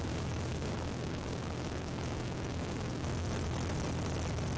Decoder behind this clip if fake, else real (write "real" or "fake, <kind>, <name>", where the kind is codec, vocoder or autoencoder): fake, autoencoder, DAC-VAE